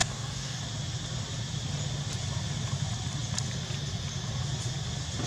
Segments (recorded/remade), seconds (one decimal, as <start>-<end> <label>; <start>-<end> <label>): 0.0-0.6 remade; 0.6-5.3 recorded